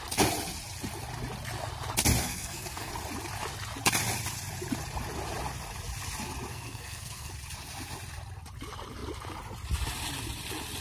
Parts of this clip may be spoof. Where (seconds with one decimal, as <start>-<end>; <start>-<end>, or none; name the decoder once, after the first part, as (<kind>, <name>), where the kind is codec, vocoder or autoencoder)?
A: 2.2-2.9 (codec, SNAC); 6.5-7.3